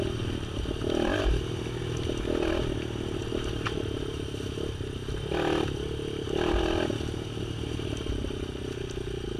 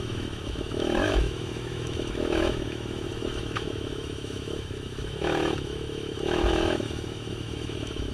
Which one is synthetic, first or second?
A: second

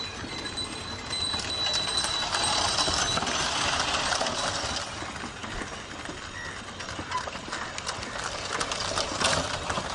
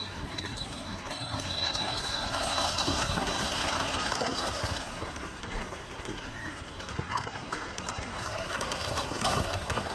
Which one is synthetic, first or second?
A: second